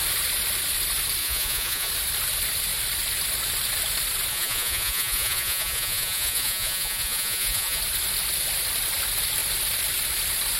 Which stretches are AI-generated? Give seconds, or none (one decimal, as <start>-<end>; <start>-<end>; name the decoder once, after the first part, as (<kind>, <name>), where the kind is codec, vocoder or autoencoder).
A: 1.2-1.9 (vocoder, Vocos); 4.3-7.8

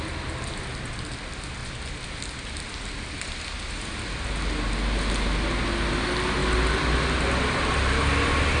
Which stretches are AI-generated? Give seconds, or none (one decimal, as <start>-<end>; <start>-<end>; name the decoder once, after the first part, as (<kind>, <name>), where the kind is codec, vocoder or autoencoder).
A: none

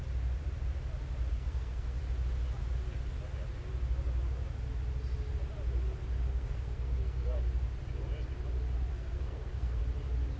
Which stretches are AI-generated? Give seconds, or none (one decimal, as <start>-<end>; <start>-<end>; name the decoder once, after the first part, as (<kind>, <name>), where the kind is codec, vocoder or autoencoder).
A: 1.3-2.0 (codec, SNAC); 6.3-7.4; 8.9-9.8

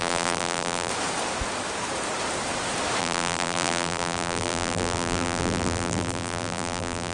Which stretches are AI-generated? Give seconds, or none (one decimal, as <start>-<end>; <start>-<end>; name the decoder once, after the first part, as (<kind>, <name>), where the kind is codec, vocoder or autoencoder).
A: 0.0-0.9 (vocoder, BigVGAN v2); 3.0-7.1

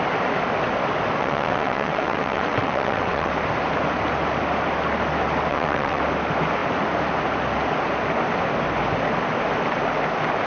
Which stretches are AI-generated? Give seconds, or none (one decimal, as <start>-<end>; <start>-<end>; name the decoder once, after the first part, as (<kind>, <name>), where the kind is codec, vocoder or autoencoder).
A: 1.2-3.3 (vocoder, WaveNeXt); 5.5-6.0

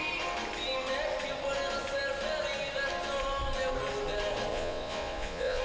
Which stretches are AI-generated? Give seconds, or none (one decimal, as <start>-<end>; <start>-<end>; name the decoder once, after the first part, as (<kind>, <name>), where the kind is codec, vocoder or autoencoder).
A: 4.5-5.6 (vocoder, Vocos)

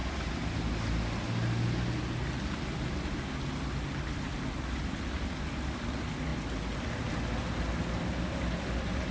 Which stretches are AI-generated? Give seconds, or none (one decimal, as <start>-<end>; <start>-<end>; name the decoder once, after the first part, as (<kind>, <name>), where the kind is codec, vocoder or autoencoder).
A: none

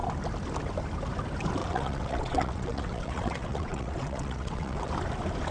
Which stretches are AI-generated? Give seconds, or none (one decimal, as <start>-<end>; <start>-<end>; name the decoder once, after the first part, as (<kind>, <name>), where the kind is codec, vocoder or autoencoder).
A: 1.6-4.9 (vocoder, WaveNeXt)